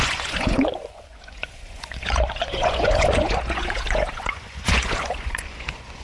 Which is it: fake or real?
fake